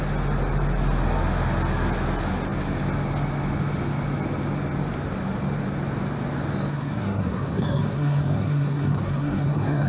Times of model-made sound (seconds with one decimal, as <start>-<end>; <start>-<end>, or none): 6.7-9.9